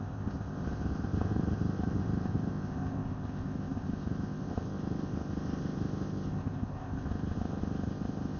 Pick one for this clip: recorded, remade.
remade